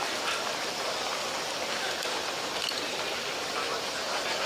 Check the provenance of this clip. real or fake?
real